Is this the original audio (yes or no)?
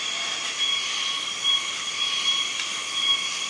no